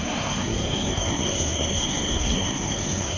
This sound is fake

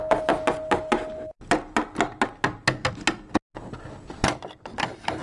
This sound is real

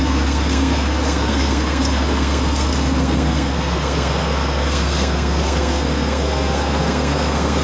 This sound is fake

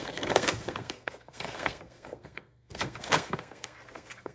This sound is fake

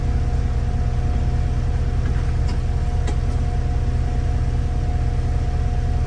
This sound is real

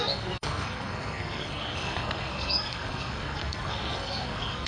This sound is fake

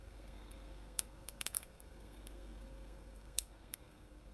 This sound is fake